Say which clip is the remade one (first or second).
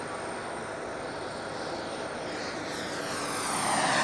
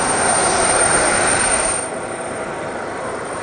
second